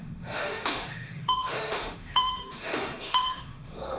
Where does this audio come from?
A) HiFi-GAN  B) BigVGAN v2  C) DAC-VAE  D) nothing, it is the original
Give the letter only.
C